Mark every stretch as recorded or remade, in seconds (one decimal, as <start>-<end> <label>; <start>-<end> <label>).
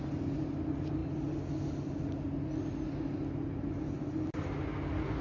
0.0-5.2 recorded